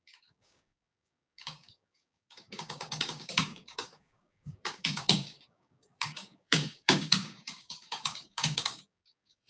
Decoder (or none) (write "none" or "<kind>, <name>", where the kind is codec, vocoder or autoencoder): codec, DAC